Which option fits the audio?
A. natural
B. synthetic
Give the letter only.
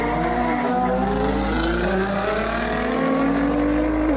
A